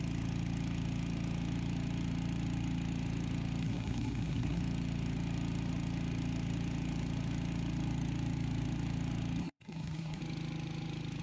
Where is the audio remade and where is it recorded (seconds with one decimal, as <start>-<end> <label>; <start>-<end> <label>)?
0.0-3.6 recorded; 3.6-4.6 remade; 4.6-9.4 recorded; 9.4-10.2 remade; 10.2-11.2 recorded